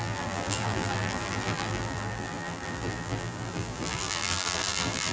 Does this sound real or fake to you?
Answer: fake